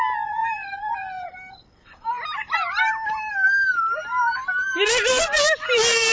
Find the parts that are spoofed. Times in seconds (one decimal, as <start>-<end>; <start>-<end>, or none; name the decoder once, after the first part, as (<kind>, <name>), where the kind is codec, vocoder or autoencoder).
0.4-2.7 (vocoder, BigVGAN v2); 4.1-6.1